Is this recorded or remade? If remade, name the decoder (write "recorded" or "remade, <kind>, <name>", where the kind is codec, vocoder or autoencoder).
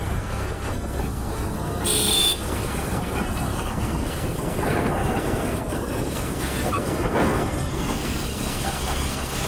remade, codec, SNAC